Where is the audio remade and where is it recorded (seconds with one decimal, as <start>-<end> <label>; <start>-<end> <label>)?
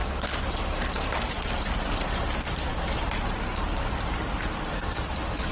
0.0-0.6 recorded; 0.6-5.5 remade